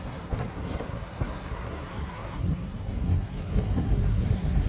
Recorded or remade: remade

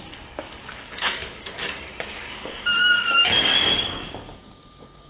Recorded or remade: remade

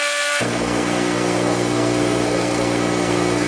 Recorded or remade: remade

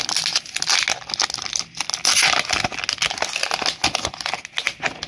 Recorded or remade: recorded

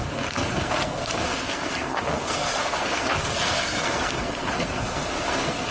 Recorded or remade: remade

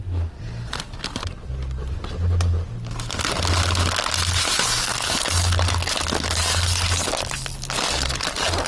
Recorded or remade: recorded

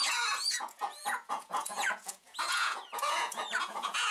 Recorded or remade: remade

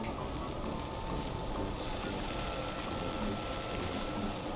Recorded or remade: recorded